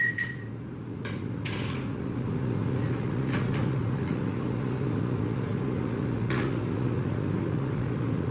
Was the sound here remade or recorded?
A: remade